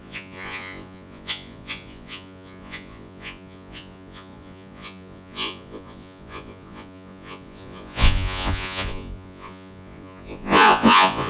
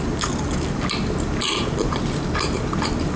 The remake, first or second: first